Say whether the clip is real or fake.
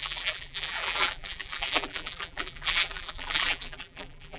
fake